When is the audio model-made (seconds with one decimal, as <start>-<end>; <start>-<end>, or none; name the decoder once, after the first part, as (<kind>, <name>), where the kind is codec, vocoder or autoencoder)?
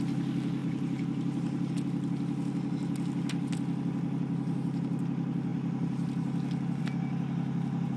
0.6-1.7 (vocoder, BigVGAN v2)